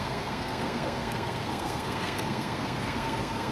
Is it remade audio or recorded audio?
remade